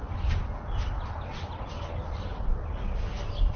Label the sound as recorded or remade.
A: recorded